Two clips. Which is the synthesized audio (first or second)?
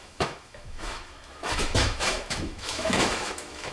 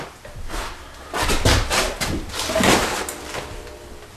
first